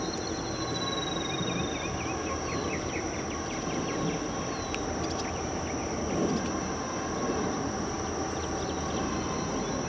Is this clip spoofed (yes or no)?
no